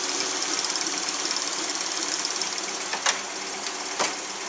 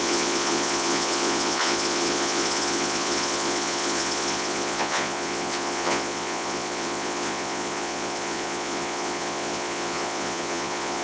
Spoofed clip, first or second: second